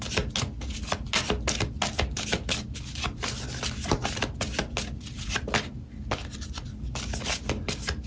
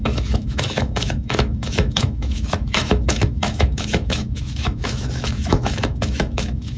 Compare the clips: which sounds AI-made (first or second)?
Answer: second